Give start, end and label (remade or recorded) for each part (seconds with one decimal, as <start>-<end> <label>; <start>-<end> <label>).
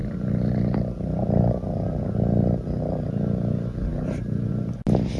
0.0-5.2 recorded